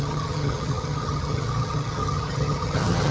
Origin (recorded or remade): remade